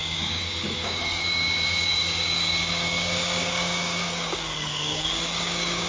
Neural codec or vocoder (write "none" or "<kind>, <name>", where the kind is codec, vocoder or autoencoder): codec, DAC